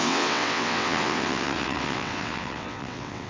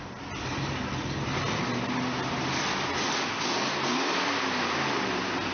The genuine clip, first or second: second